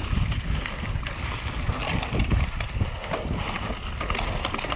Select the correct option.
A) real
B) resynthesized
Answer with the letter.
A